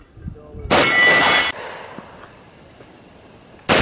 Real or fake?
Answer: real